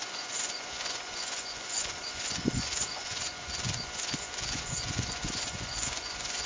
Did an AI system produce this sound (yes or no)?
yes